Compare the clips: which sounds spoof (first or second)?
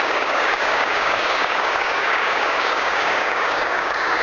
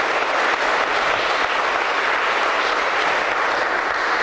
first